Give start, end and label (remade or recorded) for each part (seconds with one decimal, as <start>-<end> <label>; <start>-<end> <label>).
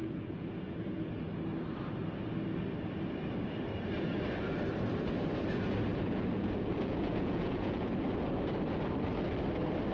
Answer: 0.0-1.1 remade; 1.1-5.9 recorded; 5.9-7.9 remade; 7.9-9.9 recorded